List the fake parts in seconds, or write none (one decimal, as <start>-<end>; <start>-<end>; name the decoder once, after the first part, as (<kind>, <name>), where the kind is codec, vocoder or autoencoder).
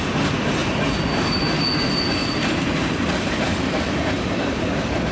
2.2-4.6 (vocoder, BigVGAN v2)